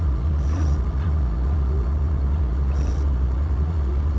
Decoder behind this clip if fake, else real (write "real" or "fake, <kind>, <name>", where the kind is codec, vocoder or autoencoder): fake, vocoder, Vocos